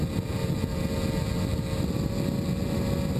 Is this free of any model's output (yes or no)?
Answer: yes